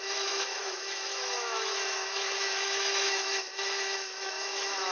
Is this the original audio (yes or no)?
no